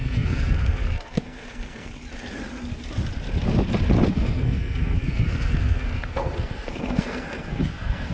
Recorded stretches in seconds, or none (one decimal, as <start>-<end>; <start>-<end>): 1.9-4.1